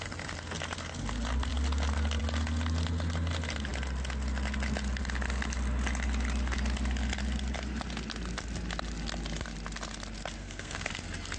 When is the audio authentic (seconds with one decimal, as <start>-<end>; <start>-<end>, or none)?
0.0-10.4; 10.9-11.4